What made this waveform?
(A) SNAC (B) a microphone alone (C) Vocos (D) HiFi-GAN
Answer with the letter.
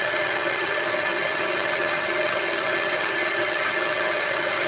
D